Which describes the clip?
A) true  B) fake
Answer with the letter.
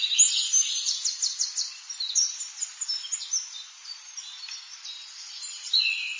A